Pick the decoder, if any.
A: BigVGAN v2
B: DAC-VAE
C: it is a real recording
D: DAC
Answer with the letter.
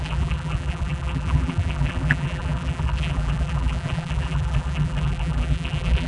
A